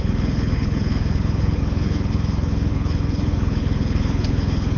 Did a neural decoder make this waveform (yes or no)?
yes